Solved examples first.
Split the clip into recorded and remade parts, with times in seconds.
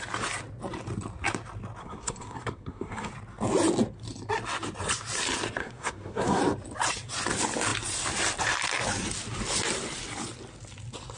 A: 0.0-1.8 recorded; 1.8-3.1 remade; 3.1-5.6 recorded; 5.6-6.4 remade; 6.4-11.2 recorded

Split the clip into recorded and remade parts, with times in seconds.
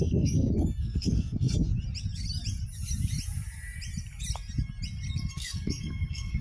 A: 0.0-1.7 remade; 1.7-5.3 recorded; 5.3-6.4 remade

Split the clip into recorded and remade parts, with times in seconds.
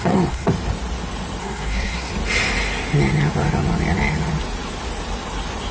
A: 0.0-0.5 remade; 0.5-1.4 recorded; 1.4-2.1 remade; 2.1-5.7 recorded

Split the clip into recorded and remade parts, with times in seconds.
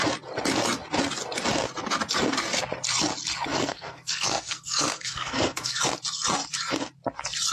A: 0.0-3.5 recorded; 3.5-5.8 remade; 5.8-7.5 recorded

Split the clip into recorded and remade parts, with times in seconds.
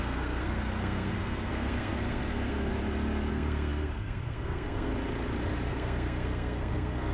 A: 0.0-2.7 remade; 2.7-3.3 recorded; 3.3-4.9 remade; 4.9-5.7 recorded; 5.7-7.1 remade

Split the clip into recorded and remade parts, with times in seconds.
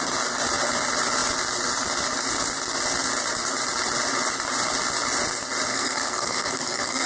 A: 0.0-5.7 recorded; 5.7-7.1 remade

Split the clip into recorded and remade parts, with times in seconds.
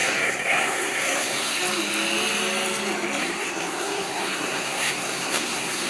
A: 0.0-1.6 remade; 1.6-3.2 recorded; 3.2-5.9 remade